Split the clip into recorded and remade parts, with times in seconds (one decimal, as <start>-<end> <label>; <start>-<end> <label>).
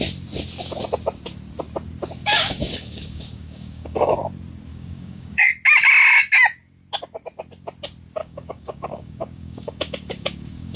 0.0-2.2 recorded; 2.2-4.2 remade; 4.2-4.7 recorded; 4.7-5.5 remade; 5.5-8.2 recorded; 8.2-10.8 remade